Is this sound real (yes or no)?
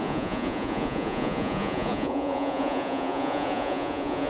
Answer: no